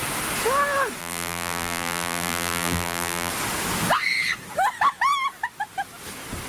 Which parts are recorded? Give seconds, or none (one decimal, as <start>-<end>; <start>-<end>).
0.0-1.0; 3.3-6.5

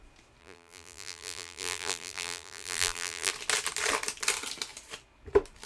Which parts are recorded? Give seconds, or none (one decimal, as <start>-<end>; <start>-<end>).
0.0-0.4; 3.3-5.7

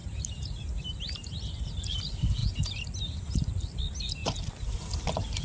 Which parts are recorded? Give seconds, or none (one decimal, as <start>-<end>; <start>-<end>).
1.7-5.4

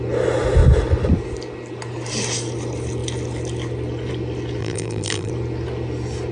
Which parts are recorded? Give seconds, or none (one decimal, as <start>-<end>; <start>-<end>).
0.0-4.6; 5.3-6.3